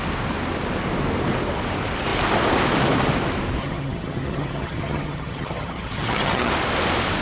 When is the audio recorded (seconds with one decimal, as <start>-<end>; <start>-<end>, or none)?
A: 0.0-3.6; 6.5-7.2